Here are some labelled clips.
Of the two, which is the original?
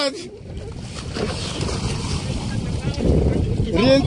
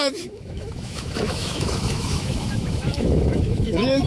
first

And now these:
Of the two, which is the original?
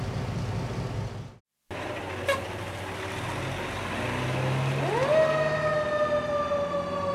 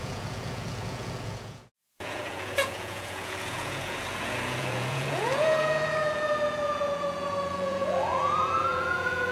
first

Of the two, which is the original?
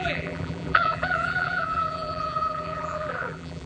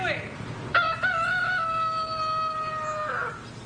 second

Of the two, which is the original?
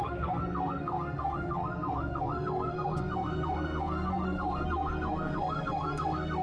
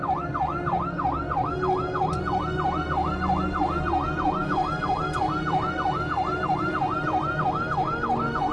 second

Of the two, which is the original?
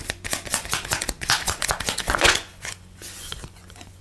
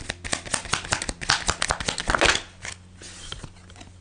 second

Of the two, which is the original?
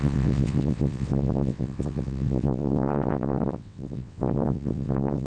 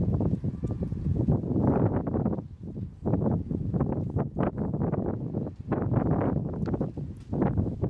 second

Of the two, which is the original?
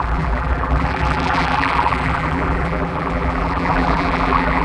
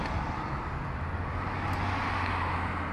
second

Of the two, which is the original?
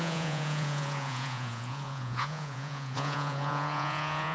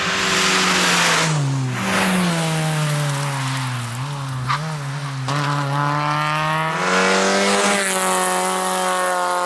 second